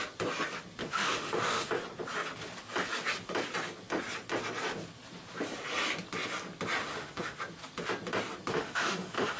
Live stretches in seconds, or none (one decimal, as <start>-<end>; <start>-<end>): 0.0-0.8; 1.7-6.8; 7.4-8.5